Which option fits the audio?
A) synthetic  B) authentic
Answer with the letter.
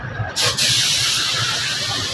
B